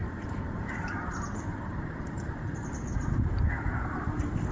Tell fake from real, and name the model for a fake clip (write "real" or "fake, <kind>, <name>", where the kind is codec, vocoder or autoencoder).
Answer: fake, vocoder, BigVGAN v2